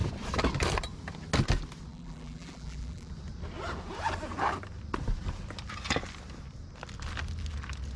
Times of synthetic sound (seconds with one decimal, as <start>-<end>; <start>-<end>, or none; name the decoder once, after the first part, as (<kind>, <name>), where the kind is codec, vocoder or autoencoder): 1.9-3.1 (vocoder, BigVGAN v2)